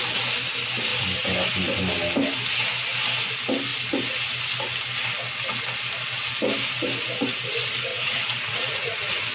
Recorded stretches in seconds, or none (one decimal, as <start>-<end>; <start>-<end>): 0.0-7.9